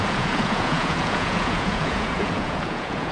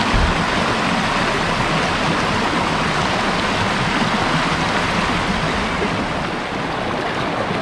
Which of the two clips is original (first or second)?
second